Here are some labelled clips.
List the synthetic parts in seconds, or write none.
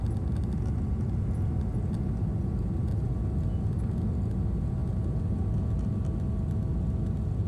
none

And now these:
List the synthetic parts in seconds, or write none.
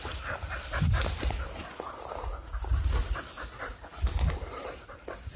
none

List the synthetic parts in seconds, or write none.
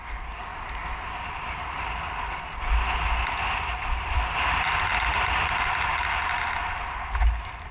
none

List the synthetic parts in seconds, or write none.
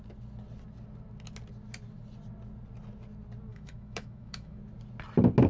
3.5-4.6 (autoencoder, DAC-VAE)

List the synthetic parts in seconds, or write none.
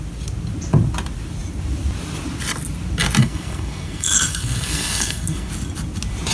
3.2-5.5 (codec, SNAC)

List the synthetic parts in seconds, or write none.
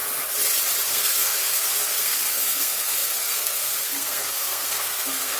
0.9-5.4 (codec, SNAC)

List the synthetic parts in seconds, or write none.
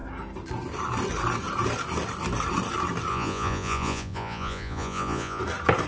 3.1-5.4 (vocoder, Vocos)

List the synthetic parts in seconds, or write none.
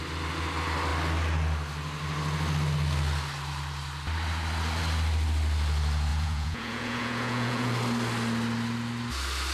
6.1-7.7 (vocoder, Vocos)